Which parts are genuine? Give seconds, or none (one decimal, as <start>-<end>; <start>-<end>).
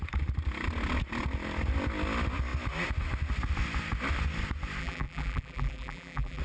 0.0-4.8